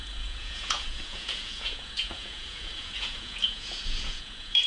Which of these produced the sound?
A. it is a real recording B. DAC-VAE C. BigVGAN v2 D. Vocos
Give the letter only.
D